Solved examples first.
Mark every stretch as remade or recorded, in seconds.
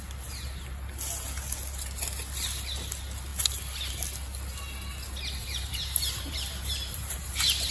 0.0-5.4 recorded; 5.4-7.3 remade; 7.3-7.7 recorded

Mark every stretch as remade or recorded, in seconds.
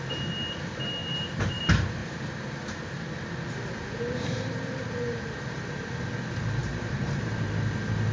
0.0-1.0 recorded; 1.0-1.6 remade; 1.6-2.0 recorded; 2.0-6.1 remade; 6.1-6.6 recorded; 6.6-7.2 remade; 7.2-8.1 recorded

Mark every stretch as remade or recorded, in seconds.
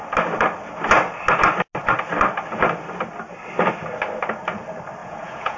0.0-5.0 recorded; 5.0-5.6 remade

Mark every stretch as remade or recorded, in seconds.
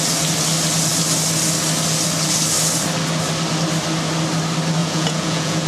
0.0-4.8 recorded; 4.8-5.7 remade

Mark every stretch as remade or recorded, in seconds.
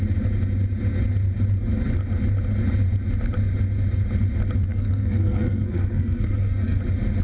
0.0-4.7 recorded; 4.7-6.8 remade; 6.8-7.2 recorded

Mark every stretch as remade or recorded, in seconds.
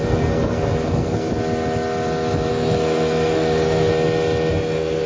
0.0-1.3 remade; 1.3-2.5 recorded; 2.5-3.9 remade; 3.9-4.5 recorded; 4.5-5.1 remade